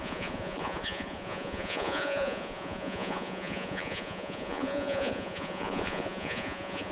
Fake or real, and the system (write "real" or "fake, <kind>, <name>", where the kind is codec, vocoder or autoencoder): fake, vocoder, Vocos